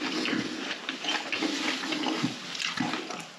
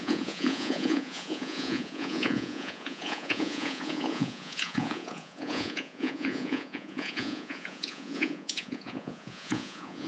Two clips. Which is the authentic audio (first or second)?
first